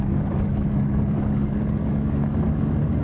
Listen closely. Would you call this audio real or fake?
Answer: fake